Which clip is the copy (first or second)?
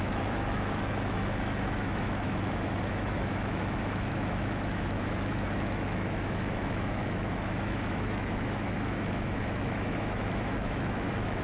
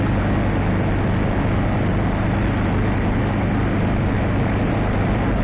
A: first